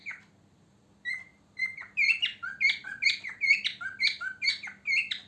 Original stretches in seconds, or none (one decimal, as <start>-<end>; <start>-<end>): 0.0-0.5